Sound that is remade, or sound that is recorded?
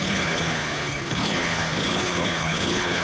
remade